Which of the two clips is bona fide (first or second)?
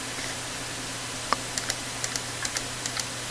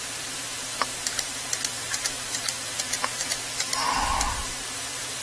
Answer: first